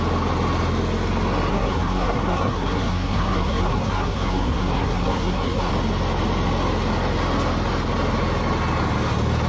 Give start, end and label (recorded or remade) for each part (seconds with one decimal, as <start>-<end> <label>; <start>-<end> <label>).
0.0-1.5 recorded; 1.5-5.7 remade; 5.7-9.5 recorded